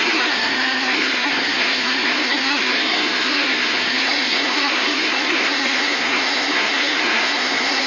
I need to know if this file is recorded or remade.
remade